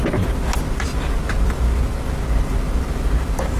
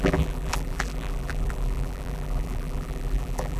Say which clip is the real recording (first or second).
first